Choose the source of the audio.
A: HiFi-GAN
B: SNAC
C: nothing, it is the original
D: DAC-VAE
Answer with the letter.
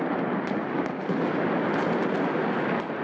C